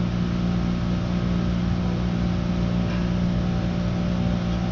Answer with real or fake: real